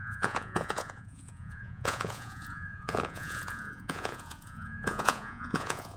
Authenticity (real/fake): fake